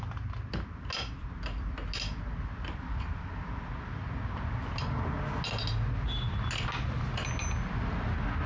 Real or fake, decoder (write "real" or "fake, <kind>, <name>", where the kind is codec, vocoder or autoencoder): real